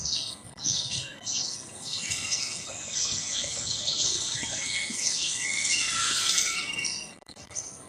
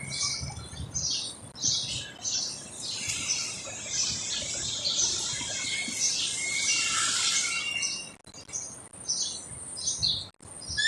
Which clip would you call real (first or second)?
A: second